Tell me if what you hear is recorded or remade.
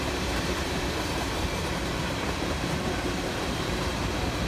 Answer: remade